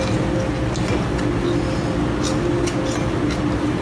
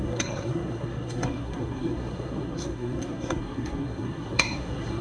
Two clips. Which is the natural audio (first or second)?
first